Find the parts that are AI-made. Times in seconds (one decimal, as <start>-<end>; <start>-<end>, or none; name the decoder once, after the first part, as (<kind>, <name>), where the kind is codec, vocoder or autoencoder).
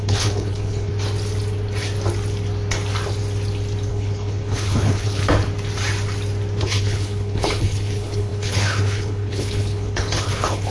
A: 0.0-0.9 (codec, HILCodec); 3.9-5.2; 6.6-10.7